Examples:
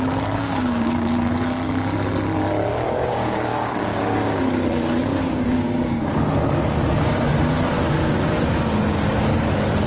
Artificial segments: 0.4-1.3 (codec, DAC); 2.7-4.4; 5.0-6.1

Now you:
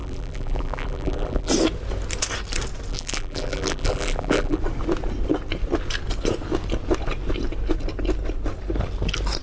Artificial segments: 0.0-1.5 (vocoder, BigVGAN v2); 2.9-4.6

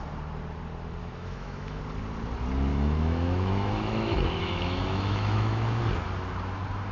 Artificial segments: 1.0-1.8 (autoencoder, DAC-VAE); 2.7-5.8

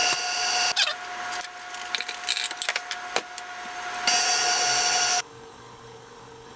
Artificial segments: 5.1-6.6 (codec, DAC)